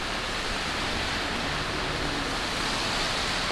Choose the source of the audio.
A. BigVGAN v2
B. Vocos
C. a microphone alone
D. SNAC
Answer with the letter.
C